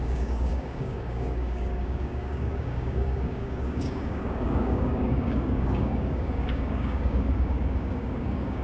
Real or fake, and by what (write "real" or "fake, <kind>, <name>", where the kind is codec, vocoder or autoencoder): fake, codec, DAC